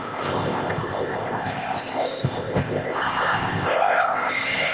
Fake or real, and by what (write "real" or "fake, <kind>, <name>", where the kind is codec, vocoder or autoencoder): fake, codec, ZipCodec